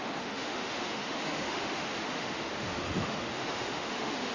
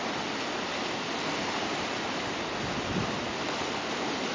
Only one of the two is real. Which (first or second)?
second